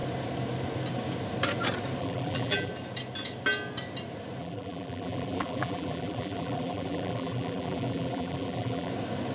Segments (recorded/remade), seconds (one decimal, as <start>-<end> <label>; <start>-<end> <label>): 0.0-2.0 recorded; 2.0-2.7 remade; 2.7-4.4 recorded; 4.4-8.9 remade; 8.9-9.3 recorded